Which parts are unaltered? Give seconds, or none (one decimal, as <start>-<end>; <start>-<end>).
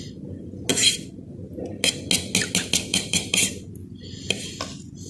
0.0-2.9; 3.7-5.1